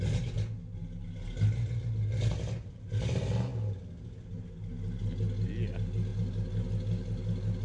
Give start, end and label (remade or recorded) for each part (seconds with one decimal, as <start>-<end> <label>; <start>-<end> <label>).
0.0-7.6 recorded